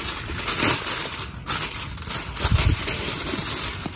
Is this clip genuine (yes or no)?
yes